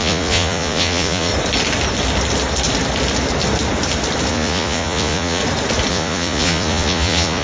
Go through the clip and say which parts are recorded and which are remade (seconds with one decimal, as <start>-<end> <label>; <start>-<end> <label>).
0.0-1.3 remade; 1.3-4.3 recorded; 4.3-5.4 remade; 5.4-5.9 recorded; 5.9-7.4 remade